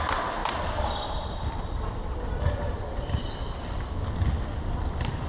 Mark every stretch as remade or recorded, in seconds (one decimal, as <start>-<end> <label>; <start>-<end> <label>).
0.0-5.3 remade

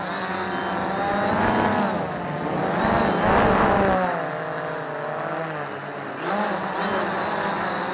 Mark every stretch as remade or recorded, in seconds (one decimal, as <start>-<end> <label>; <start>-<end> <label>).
0.0-7.9 recorded

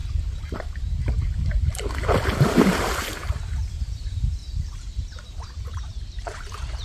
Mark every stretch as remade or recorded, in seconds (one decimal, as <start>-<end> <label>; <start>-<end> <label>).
0.0-2.9 recorded; 2.9-4.4 remade; 4.4-5.2 recorded; 5.2-6.8 remade

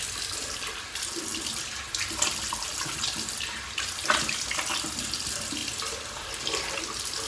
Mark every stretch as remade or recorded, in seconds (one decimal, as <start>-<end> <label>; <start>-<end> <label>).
0.0-5.6 recorded; 5.6-6.8 remade; 6.8-7.3 recorded